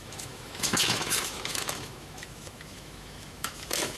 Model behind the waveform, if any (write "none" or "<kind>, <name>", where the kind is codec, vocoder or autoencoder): autoencoder, DAC-VAE